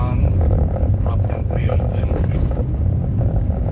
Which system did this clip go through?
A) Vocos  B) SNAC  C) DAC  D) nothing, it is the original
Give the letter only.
C